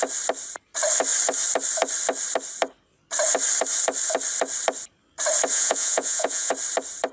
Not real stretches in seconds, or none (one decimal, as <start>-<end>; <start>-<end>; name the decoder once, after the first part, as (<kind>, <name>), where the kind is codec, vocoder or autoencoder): 5.5-6.5 (vocoder, Vocos)